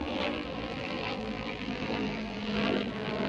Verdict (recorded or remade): remade